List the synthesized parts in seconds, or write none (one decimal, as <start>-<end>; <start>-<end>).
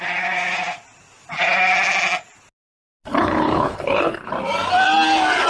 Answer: 3.1-4.3